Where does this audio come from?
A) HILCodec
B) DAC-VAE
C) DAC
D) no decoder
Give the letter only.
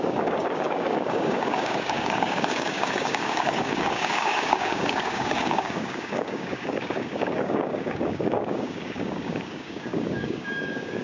C